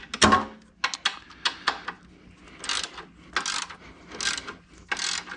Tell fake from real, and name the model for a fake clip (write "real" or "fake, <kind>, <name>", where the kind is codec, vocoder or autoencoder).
real